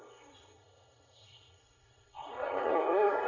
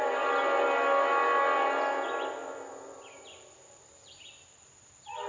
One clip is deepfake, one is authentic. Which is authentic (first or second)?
second